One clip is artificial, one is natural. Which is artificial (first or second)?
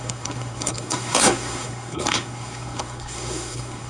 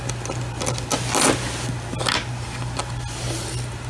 first